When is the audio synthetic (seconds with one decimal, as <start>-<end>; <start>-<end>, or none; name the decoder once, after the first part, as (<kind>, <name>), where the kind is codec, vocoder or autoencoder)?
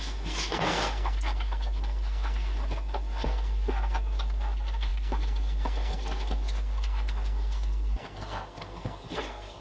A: 0.0-9.6 (codec, SNAC)